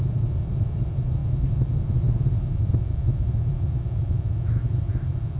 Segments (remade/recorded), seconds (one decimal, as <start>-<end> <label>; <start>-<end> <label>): 0.0-5.4 recorded